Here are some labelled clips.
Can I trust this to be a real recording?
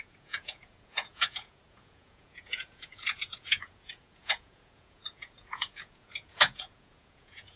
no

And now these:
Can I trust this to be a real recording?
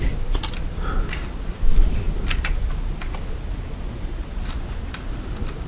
yes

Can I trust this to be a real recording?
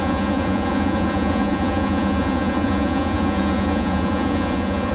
no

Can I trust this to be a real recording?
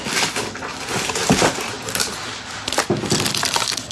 yes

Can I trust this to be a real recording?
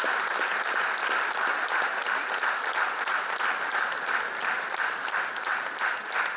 yes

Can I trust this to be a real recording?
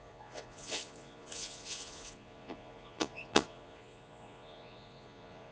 no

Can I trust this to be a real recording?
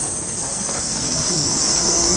no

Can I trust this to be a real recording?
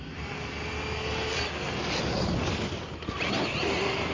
yes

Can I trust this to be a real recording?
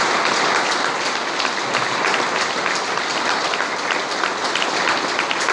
yes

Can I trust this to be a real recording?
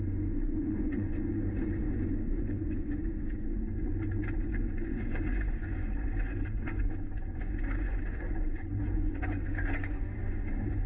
no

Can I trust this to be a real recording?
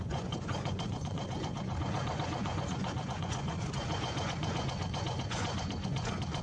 no